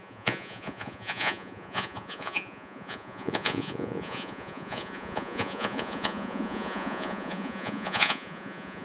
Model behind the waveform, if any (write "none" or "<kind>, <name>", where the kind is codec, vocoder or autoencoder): vocoder, Vocos